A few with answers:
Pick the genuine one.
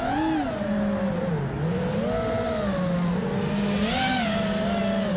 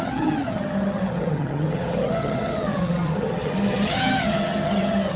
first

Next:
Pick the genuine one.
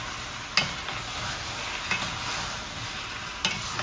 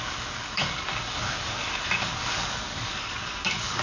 first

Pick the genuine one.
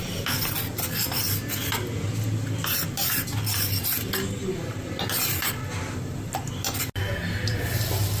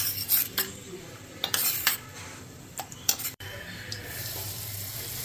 first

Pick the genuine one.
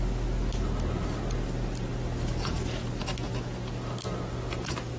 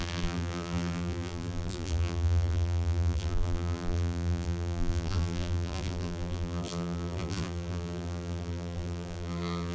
first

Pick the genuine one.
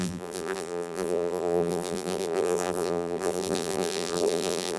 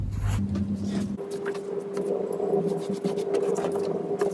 second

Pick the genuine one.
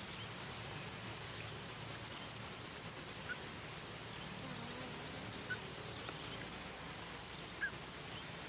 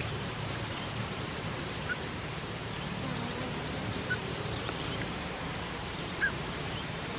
first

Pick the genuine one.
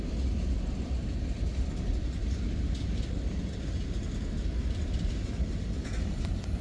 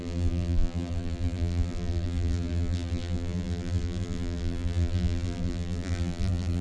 first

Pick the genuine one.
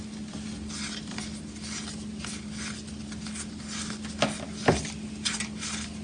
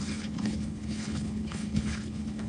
first